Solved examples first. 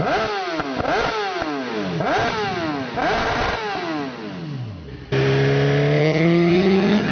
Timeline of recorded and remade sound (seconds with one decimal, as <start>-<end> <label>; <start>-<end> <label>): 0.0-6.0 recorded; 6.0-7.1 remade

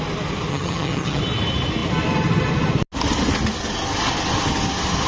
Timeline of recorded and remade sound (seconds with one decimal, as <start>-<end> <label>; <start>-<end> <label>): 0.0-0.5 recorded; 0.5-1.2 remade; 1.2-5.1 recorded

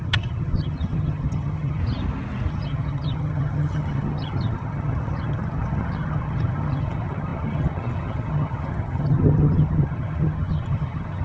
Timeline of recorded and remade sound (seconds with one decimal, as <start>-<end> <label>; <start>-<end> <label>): 0.0-1.8 remade; 1.8-2.5 recorded; 2.5-11.2 remade